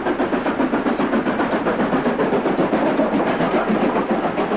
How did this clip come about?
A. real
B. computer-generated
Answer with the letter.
B